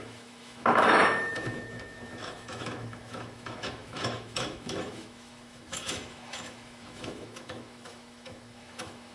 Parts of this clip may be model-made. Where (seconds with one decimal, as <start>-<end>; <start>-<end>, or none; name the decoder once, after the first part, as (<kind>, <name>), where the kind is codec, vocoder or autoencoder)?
0.0-9.1 (autoencoder, DAC-VAE)